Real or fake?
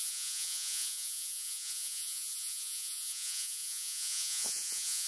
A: fake